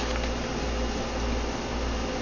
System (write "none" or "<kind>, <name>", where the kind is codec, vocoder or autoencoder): none